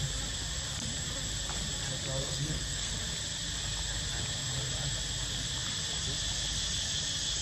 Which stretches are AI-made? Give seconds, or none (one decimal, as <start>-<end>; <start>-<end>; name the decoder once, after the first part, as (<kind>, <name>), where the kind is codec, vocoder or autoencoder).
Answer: 2.2-2.9 (codec, SNAC)